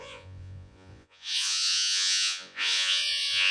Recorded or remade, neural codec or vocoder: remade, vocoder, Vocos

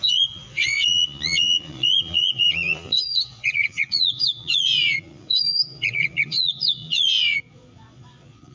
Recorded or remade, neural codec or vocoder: remade, vocoder, Vocos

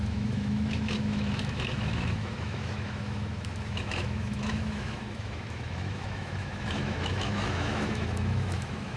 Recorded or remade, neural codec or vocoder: remade, autoencoder, DAC-VAE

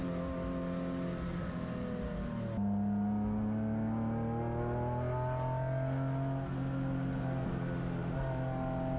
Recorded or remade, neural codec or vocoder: recorded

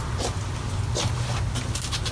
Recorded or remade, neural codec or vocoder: recorded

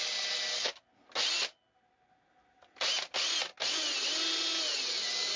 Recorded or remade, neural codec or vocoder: recorded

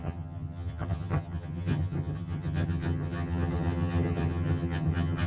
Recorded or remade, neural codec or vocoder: remade, vocoder, HiFi-GAN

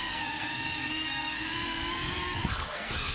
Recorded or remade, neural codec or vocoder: remade, codec, SNAC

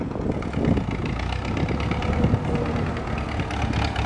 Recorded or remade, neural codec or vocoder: recorded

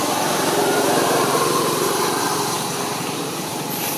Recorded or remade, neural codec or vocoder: remade, vocoder, BigVGAN v2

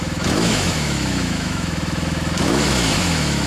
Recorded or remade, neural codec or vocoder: remade, autoencoder, DAC-VAE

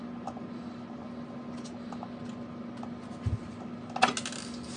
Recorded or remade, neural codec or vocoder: recorded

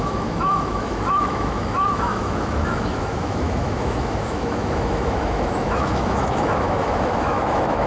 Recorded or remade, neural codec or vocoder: remade, autoencoder, DAC-VAE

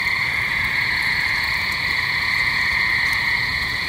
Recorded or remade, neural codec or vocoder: remade, vocoder, Vocos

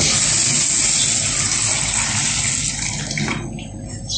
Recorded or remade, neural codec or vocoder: recorded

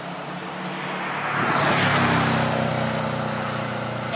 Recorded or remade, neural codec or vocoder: recorded